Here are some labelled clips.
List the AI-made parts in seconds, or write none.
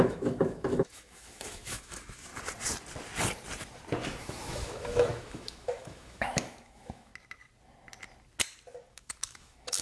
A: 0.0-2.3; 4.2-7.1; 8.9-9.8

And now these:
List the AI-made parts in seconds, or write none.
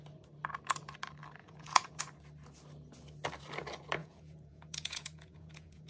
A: 1.4-2.0; 4.0-5.9